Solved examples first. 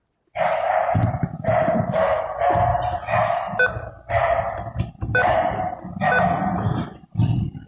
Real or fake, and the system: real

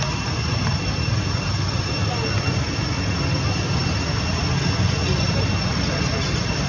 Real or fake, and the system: real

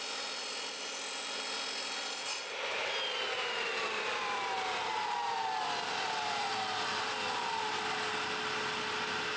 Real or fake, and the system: real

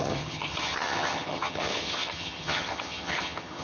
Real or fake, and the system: fake, vocoder, HiFi-GAN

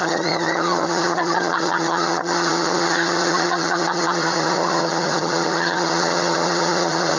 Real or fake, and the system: fake, vocoder, HiFi-GAN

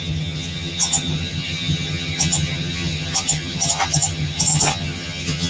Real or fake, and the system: fake, vocoder, HiFi-GAN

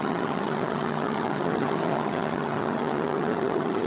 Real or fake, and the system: fake, vocoder, HiFi-GAN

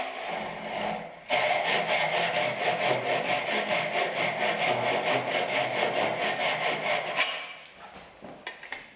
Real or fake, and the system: real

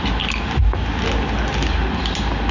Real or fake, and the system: real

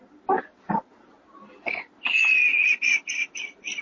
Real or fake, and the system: real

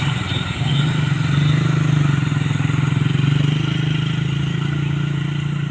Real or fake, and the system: real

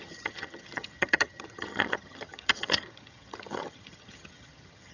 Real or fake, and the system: fake, vocoder, HiFi-GAN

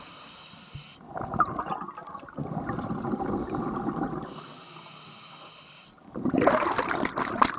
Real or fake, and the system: real